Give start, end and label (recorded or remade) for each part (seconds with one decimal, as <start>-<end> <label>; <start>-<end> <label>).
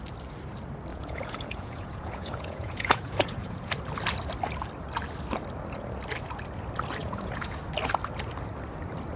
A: 0.0-0.9 recorded; 0.9-3.7 remade; 3.7-7.0 recorded; 7.0-7.6 remade; 7.6-9.2 recorded